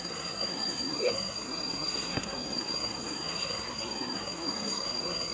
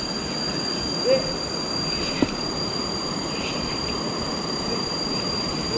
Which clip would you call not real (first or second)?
first